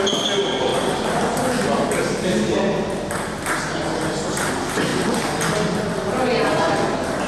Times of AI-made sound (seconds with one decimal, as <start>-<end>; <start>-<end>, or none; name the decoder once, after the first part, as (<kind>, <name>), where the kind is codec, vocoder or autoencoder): none